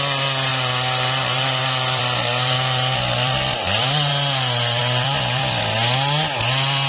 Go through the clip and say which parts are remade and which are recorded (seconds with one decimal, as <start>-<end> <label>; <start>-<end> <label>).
0.0-0.5 recorded; 0.5-4.1 remade; 4.1-4.8 recorded; 4.8-5.6 remade; 5.6-6.9 recorded

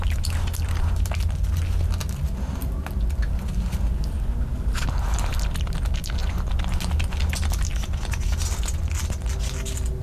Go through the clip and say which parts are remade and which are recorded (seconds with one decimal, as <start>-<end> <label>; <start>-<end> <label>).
0.0-10.0 recorded

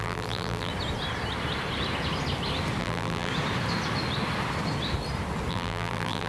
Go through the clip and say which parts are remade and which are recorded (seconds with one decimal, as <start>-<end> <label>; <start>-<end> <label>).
0.0-0.7 remade; 0.7-2.8 recorded; 2.8-3.3 remade; 3.3-5.5 recorded; 5.5-6.3 remade

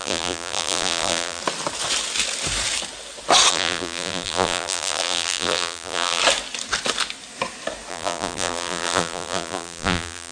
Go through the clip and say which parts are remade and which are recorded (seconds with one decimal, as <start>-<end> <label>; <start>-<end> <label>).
0.0-1.4 remade; 1.4-3.5 recorded; 3.5-6.2 remade; 6.2-7.9 recorded; 7.9-10.3 remade